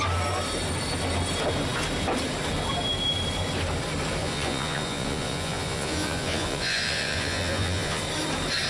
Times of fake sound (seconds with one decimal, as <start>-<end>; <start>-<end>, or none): 4.2-8.0